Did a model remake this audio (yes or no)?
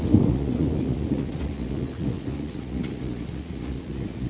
yes